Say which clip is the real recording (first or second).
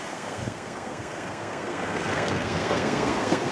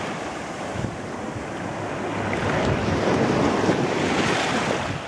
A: second